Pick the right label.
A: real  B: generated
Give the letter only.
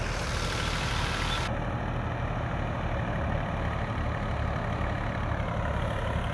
A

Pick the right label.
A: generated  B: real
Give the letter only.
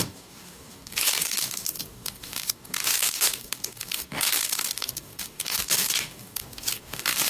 A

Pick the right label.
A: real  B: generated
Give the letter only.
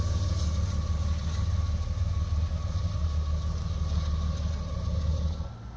A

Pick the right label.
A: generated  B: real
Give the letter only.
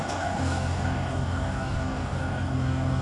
A